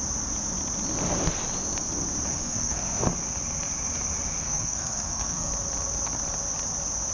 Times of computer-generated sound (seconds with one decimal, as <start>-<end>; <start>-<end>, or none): 2.3-3.0; 4.4-5.5